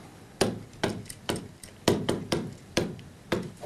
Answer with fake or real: fake